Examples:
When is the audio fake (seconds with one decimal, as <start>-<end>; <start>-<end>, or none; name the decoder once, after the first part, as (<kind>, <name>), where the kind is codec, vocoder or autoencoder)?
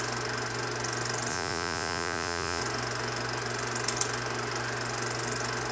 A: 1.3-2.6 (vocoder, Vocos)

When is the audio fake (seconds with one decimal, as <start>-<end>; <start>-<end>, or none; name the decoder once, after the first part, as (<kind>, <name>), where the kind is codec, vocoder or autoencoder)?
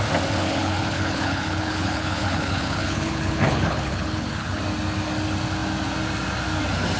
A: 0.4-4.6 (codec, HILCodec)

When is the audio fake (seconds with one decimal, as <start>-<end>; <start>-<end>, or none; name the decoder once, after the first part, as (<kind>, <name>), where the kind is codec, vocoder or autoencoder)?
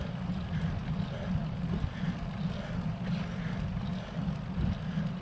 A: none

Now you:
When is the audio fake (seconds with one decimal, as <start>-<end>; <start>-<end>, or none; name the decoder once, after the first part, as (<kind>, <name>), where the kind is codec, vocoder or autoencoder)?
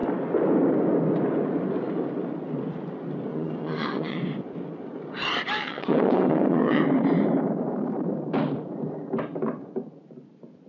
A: 3.3-4.2 (vocoder, WaveNeXt); 5.6-6.8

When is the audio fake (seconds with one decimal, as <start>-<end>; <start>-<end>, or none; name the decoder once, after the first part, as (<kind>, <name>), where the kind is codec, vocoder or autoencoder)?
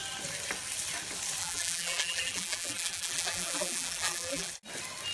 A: 1.4-4.5 (vocoder, BigVGAN v2)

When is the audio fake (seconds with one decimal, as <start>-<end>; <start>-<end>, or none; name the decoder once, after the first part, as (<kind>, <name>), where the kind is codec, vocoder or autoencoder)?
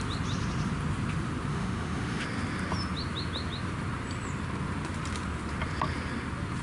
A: 1.5-2.2 (autoencoder, DAC-VAE)